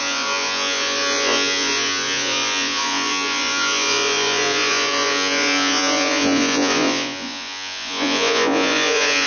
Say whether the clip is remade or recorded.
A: remade